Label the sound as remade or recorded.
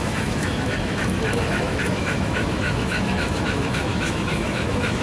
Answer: remade